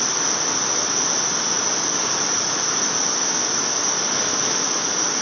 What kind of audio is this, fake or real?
real